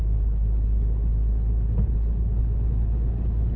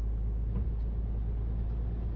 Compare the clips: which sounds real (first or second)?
second